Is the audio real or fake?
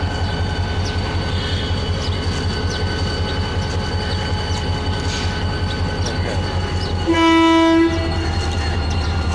real